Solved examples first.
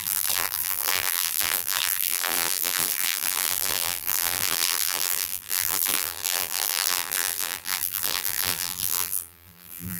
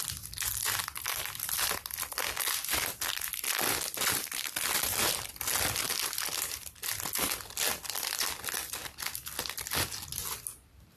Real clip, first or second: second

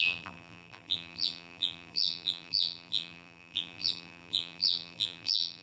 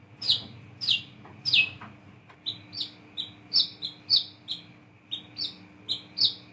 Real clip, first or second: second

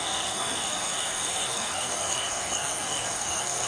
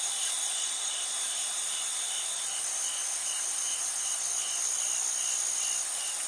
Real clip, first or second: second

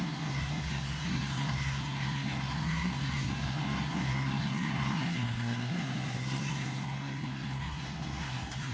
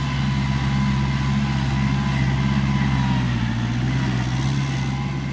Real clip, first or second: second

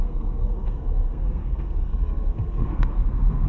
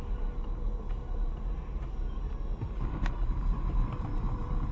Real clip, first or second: second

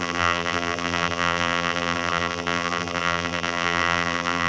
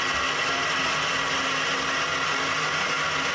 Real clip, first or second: second